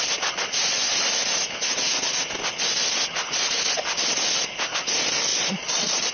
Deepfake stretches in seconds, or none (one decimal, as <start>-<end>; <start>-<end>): 5.3-6.1